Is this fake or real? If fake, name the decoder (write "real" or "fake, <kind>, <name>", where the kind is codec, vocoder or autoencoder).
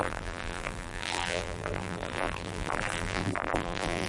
fake, vocoder, BigVGAN v2